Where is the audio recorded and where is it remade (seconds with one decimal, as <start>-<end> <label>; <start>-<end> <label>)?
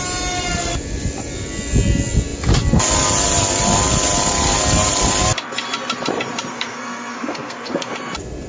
0.0-6.5 recorded; 6.5-7.9 remade; 7.9-8.5 recorded